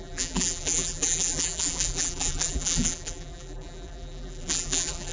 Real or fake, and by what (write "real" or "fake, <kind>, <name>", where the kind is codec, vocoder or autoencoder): fake, vocoder, BigVGAN v2